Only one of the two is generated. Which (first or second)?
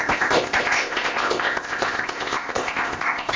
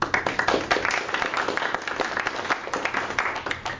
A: first